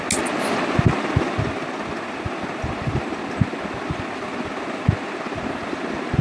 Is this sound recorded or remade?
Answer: recorded